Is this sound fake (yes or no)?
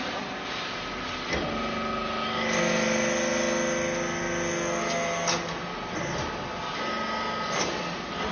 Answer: no